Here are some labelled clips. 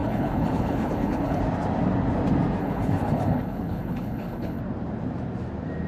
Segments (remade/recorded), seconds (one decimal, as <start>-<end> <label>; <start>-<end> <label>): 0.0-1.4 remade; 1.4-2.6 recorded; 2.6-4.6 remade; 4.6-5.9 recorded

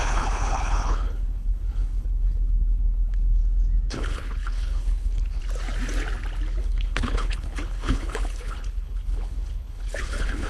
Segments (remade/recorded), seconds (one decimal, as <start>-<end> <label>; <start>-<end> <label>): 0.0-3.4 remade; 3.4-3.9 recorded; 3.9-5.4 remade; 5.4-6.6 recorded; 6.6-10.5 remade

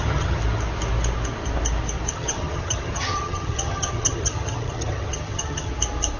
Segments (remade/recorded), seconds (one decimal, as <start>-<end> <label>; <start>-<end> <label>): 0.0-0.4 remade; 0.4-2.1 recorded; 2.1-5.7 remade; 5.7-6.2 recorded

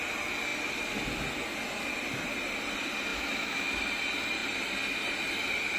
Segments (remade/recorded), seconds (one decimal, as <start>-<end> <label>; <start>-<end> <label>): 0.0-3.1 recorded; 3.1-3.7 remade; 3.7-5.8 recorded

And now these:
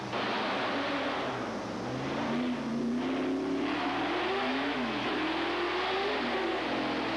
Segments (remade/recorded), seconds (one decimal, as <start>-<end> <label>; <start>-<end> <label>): 0.0-4.5 recorded; 4.5-5.1 remade; 5.1-7.2 recorded

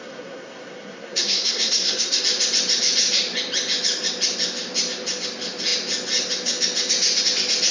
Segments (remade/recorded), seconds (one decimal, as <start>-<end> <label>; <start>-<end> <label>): 0.0-2.2 remade; 2.2-7.7 recorded

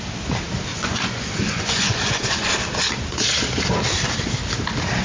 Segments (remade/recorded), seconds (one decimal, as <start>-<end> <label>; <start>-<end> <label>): 0.0-0.7 recorded; 0.7-2.5 remade; 2.5-5.0 recorded